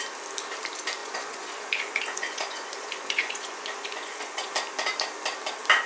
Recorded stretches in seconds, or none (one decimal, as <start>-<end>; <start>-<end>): 0.0-1.0; 4.5-5.9